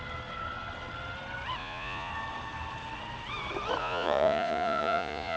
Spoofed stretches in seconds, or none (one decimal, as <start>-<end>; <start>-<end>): 1.6-2.1; 3.8-5.4